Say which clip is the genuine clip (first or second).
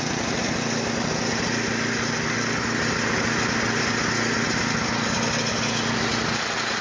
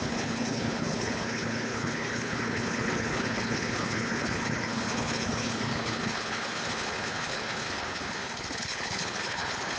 first